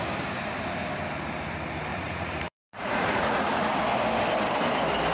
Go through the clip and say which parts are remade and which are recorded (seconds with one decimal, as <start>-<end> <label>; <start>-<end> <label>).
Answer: 0.0-1.9 recorded; 1.9-3.8 remade; 3.8-5.1 recorded